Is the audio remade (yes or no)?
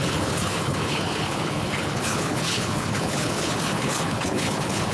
yes